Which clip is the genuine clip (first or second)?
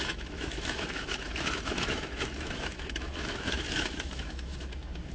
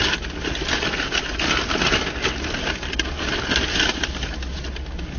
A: second